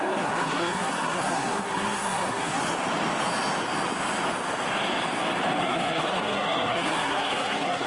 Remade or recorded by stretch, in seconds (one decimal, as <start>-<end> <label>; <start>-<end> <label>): 0.0-2.6 remade; 2.6-5.6 recorded; 5.6-7.9 remade